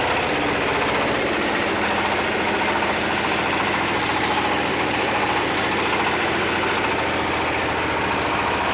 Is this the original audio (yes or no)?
yes